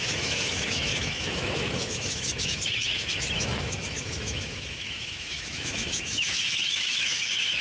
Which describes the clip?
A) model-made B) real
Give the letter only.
A